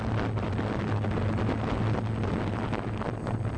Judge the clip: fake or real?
real